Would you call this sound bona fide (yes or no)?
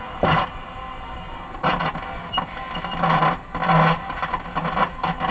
yes